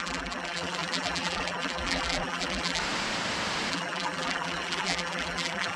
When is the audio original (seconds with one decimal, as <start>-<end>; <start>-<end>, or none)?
2.8-3.7